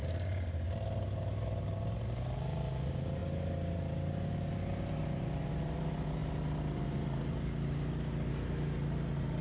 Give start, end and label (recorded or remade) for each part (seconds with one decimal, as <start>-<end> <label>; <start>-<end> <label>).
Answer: 0.0-9.4 recorded